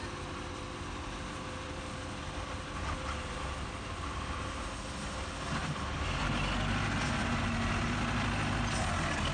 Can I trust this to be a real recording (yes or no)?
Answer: yes